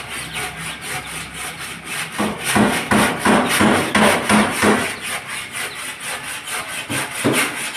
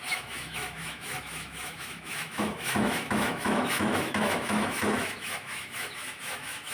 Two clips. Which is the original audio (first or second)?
first